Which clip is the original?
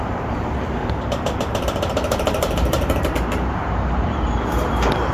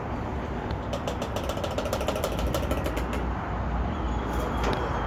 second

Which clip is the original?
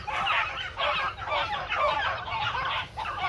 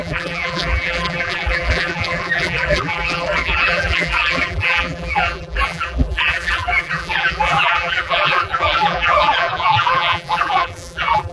first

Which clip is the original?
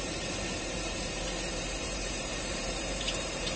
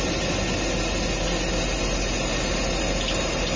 second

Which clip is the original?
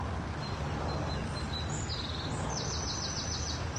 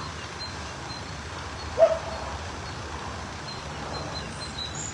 first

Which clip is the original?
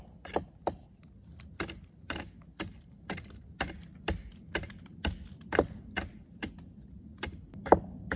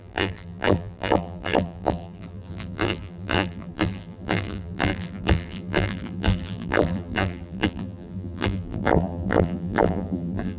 first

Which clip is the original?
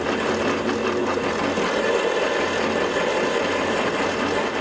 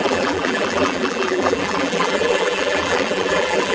first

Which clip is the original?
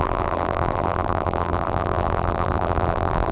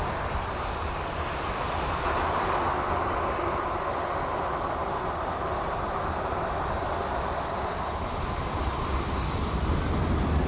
second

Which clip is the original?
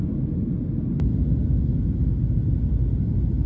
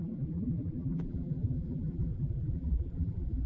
first